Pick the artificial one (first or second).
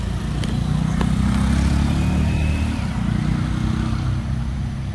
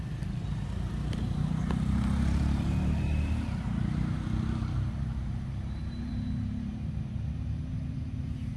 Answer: second